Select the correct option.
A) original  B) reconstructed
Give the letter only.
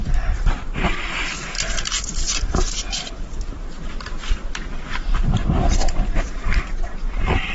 B